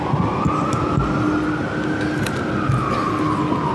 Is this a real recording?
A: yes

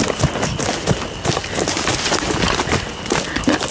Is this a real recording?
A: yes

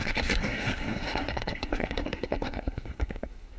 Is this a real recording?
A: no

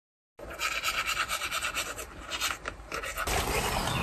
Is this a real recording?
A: yes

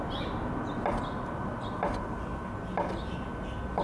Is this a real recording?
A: yes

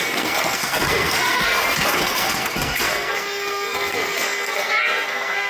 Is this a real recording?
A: no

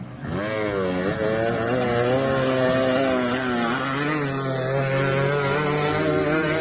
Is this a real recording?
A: yes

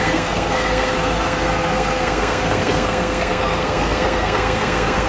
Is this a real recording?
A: no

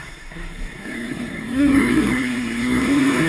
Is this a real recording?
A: no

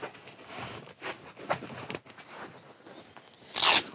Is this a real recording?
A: yes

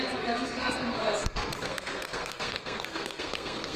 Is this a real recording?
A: no